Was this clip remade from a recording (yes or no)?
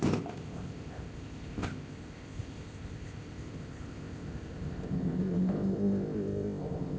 yes